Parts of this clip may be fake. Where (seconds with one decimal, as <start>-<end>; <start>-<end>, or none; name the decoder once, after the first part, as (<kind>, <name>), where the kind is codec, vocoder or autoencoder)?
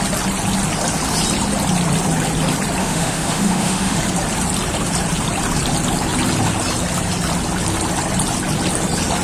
2.8-4.0 (autoencoder, DAC-VAE)